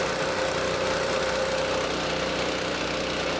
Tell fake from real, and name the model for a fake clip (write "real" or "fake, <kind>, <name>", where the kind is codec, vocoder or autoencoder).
real